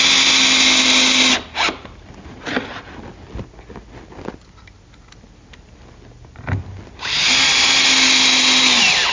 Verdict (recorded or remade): recorded